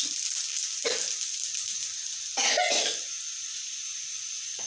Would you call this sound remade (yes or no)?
no